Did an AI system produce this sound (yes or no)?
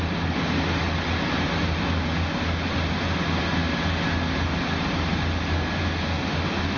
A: no